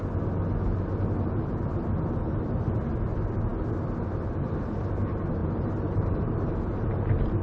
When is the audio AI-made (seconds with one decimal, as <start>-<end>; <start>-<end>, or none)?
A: 5.4-6.6